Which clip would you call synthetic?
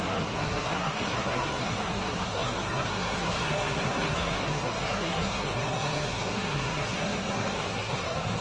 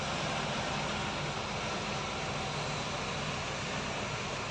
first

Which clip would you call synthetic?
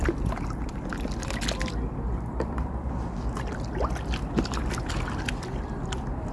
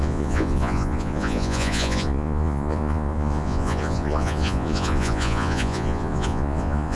second